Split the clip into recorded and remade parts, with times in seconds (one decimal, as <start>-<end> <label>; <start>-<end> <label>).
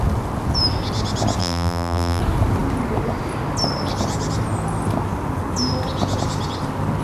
0.0-1.4 recorded; 1.4-2.2 remade; 2.2-7.0 recorded